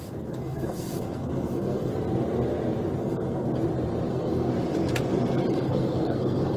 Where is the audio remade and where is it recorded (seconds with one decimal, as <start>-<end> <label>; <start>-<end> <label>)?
0.0-1.9 remade; 1.9-3.0 recorded; 3.0-3.5 remade; 3.5-4.1 recorded; 4.1-4.5 remade; 4.5-5.5 recorded; 5.5-6.6 remade